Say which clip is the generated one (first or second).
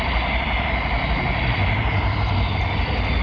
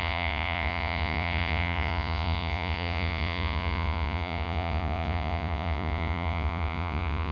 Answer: second